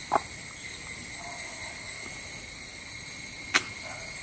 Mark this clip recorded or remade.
recorded